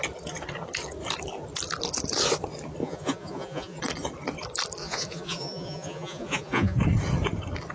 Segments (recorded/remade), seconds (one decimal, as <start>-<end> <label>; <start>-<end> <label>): 0.0-2.8 recorded; 2.8-3.8 remade; 3.8-4.8 recorded; 4.8-6.8 remade; 6.8-7.7 recorded